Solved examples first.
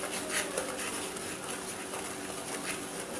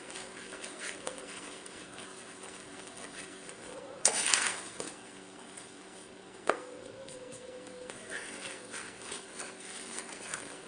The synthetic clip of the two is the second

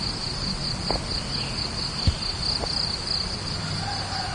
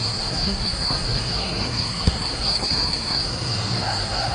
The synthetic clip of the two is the second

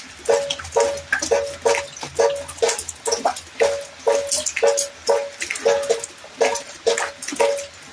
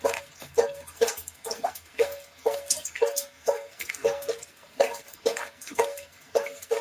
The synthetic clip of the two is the second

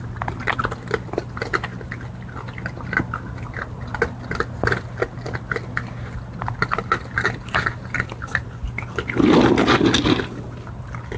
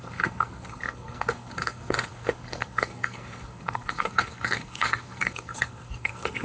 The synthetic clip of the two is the second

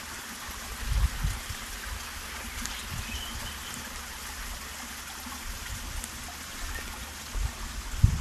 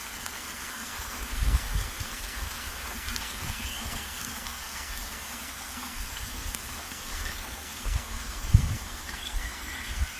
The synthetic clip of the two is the second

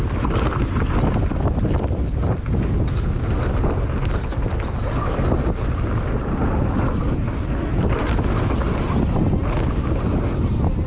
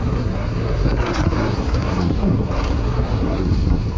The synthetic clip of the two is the second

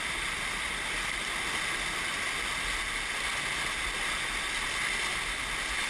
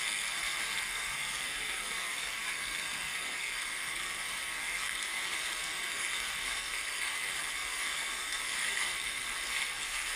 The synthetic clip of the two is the second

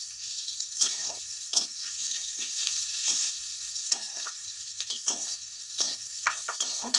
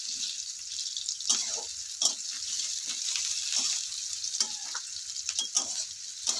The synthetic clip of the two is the first